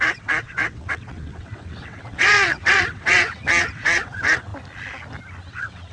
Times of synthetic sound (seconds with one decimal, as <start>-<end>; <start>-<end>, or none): 0.0-4.5; 5.5-5.9